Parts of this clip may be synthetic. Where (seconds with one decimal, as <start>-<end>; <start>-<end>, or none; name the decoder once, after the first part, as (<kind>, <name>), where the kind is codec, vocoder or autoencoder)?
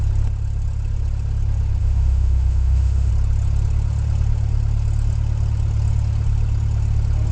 1.8-3.1 (autoencoder, DAC-VAE)